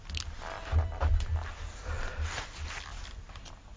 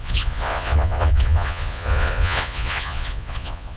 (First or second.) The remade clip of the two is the second